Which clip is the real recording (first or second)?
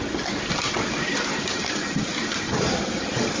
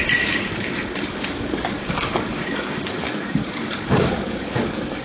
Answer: first